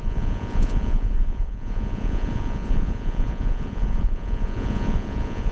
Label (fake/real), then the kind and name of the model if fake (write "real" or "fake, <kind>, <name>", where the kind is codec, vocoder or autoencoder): fake, vocoder, Vocos